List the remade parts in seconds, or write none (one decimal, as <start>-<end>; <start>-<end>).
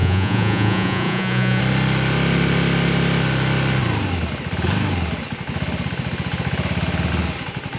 0.0-1.6